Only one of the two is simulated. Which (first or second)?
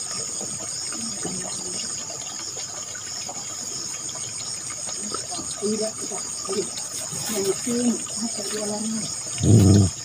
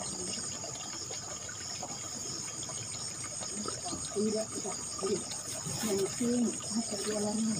second